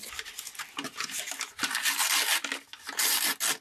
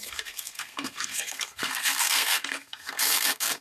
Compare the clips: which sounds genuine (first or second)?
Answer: first